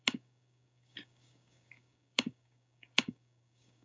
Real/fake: fake